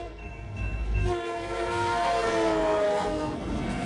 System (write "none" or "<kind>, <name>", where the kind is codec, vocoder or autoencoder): codec, SNAC